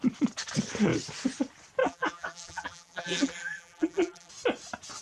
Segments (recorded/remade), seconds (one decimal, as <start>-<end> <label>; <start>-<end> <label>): 0.0-1.8 recorded; 1.8-4.3 remade; 4.3-5.0 recorded